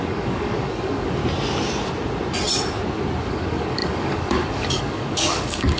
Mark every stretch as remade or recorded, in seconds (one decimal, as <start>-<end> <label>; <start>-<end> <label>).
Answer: 0.0-1.2 remade; 1.2-3.2 recorded; 3.2-5.8 remade